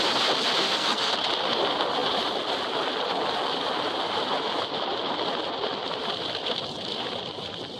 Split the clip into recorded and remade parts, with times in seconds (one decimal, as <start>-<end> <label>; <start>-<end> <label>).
0.0-0.6 recorded; 0.6-1.1 remade; 1.1-7.8 recorded